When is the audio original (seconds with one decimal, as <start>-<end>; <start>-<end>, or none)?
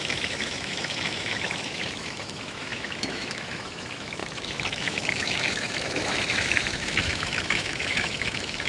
none